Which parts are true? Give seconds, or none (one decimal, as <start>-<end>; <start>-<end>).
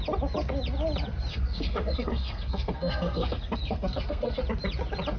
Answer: 0.0-1.3; 4.4-5.2